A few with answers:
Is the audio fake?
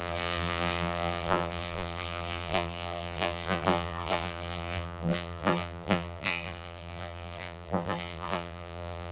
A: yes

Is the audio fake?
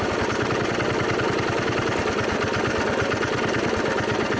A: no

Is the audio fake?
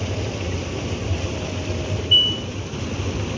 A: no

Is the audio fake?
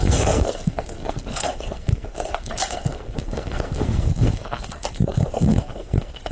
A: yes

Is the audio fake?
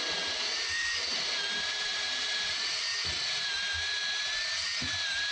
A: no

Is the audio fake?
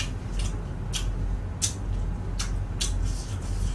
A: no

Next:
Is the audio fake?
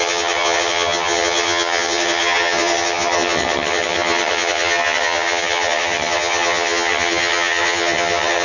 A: yes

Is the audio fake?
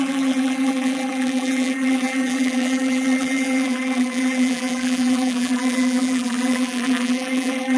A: yes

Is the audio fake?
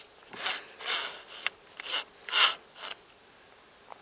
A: no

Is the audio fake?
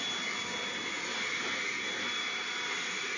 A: no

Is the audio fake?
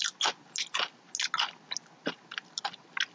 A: no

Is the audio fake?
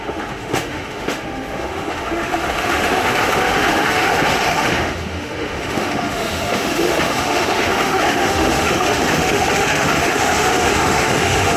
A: yes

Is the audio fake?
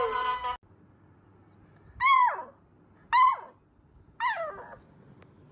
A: no